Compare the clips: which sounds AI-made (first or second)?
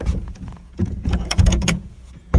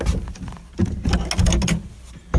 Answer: first